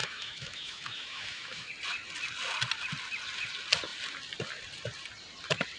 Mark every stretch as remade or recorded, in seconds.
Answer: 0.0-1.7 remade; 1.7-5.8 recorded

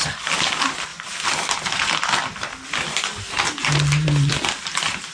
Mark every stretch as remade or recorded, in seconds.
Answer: 0.0-5.1 recorded

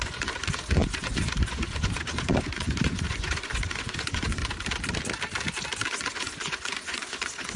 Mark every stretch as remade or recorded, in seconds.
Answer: 0.0-4.4 remade; 4.4-5.9 recorded; 5.9-7.6 remade

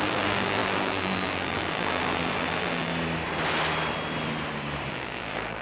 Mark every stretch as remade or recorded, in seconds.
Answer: 0.0-2.9 remade; 2.9-4.9 recorded; 4.9-5.6 remade

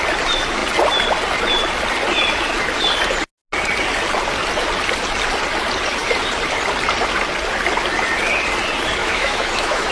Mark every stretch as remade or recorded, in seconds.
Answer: 0.0-9.0 recorded; 9.0-9.9 remade

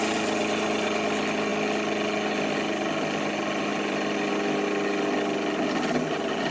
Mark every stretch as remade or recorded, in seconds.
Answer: 0.0-6.5 recorded

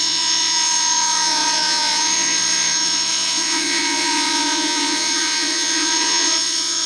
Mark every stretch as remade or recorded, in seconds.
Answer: 0.0-6.9 remade